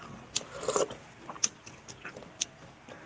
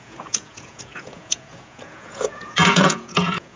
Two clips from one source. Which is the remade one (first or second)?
second